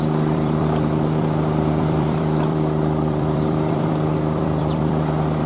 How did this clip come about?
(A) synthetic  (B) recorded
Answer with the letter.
A